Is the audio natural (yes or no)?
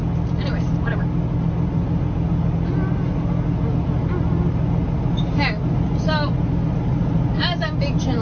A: yes